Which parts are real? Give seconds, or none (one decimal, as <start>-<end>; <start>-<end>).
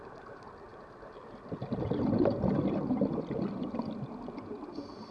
0.0-5.1